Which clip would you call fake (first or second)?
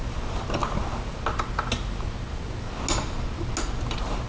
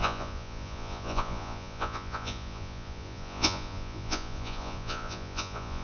second